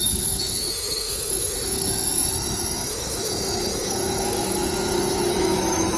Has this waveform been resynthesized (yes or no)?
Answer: yes